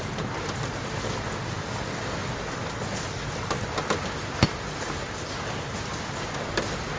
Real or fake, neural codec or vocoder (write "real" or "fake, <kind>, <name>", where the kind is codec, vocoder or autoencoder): real